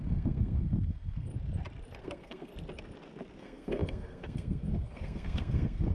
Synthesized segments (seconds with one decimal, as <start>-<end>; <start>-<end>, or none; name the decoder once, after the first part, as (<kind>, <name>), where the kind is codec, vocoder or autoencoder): 0.0-1.3 (codec, SNAC); 2.0-2.5; 3.4-5.9